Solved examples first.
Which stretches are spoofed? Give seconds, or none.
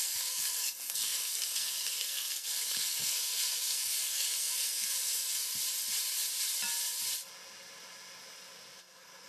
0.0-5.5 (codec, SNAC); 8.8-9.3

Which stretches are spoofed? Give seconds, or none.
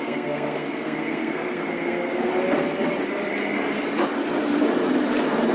0.0-2.3 (codec, SNAC)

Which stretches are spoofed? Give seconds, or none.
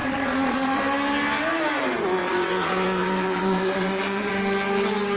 0.0-0.8 (vocoder, Vocos); 2.2-4.3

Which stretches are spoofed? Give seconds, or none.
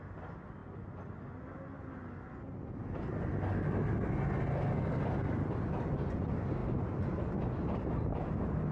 none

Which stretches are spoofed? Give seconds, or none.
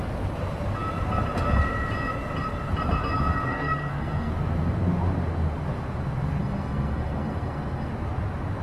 3.5-4.3 (codec, SNAC); 6.4-7.9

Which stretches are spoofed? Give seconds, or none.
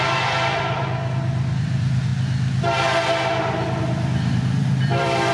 0.0-2.1 (vocoder, BigVGAN v2); 3.8-5.3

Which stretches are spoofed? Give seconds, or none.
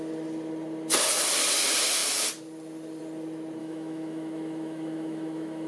3.6-5.7 (autoencoder, DAC-VAE)